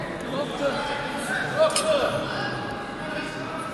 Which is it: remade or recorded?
recorded